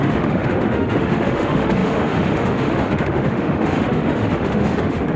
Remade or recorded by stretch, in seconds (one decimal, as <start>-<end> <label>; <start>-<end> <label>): 0.0-5.2 remade